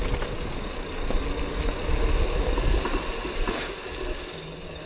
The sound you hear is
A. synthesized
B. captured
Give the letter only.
B